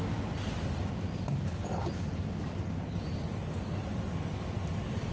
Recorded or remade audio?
recorded